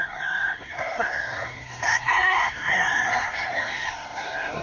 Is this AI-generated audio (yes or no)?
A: yes